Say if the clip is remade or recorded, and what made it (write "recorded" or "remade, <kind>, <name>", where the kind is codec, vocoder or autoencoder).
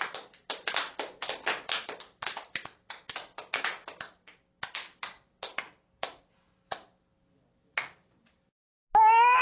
recorded